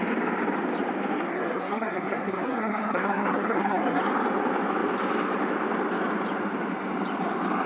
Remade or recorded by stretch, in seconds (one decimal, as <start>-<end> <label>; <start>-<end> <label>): 0.0-1.3 recorded; 1.3-4.0 remade; 4.0-7.7 recorded